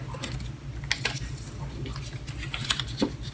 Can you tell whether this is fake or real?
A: real